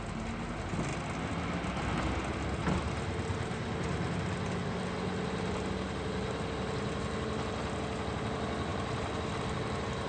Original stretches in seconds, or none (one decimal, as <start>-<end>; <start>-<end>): 0.0-10.1